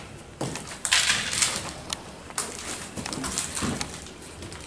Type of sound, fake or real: real